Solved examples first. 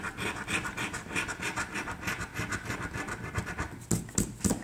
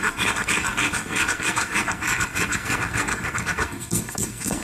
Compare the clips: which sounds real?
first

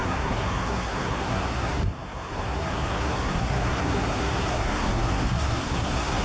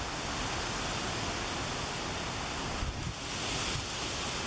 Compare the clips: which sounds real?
second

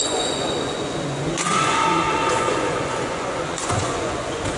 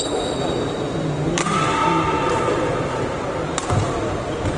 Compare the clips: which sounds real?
second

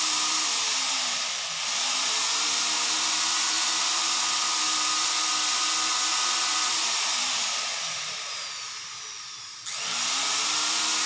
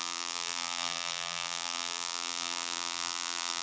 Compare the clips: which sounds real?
first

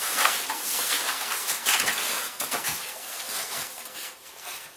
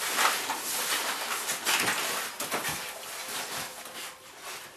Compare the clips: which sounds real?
second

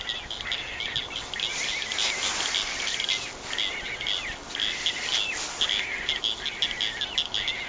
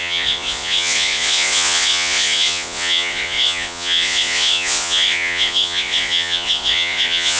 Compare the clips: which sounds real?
first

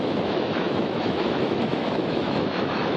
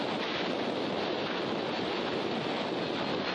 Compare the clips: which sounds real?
second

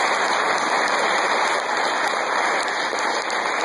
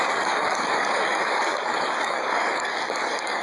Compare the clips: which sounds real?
first